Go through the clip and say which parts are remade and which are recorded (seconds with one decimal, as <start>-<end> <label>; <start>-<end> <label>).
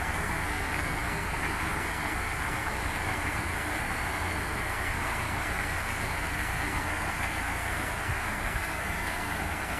0.0-9.8 remade